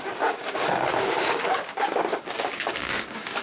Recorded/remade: remade